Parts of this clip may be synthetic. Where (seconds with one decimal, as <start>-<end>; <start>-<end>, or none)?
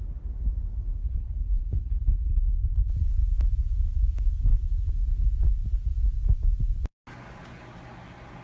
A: 1.0-2.7